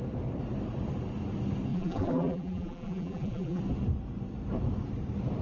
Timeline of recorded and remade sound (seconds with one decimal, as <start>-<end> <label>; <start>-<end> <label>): 0.0-1.7 recorded; 1.7-3.6 remade; 3.6-5.4 recorded